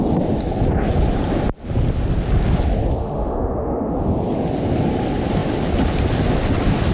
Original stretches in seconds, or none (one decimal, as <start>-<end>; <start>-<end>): 0.0-3.0; 4.1-6.9